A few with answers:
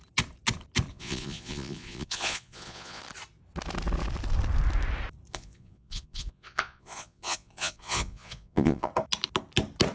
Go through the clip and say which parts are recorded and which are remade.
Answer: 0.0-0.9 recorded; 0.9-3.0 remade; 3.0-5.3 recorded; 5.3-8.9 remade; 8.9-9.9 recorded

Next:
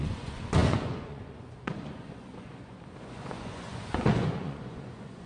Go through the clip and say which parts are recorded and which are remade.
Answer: 0.0-5.3 remade

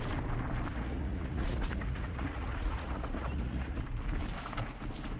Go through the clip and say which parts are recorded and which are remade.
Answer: 0.0-0.7 recorded; 0.7-3.8 remade; 3.8-5.2 recorded

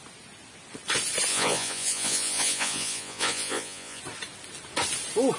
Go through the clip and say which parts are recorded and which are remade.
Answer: 0.0-1.3 recorded; 1.3-4.0 remade; 4.0-5.4 recorded